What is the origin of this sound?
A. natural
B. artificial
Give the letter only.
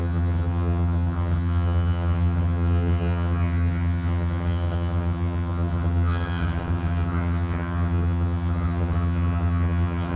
B